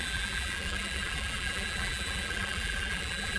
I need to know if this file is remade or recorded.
remade